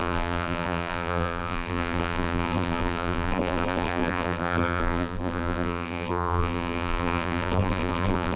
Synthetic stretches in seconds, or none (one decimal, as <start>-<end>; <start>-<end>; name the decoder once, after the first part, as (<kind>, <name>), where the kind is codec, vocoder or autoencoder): 0.0-8.4 (vocoder, BigVGAN v2)